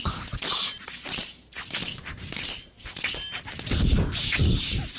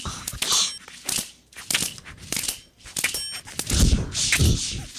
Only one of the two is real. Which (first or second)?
second